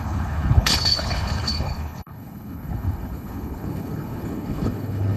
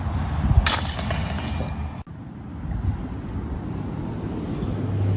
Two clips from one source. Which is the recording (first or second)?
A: second